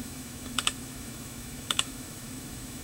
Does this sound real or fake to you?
fake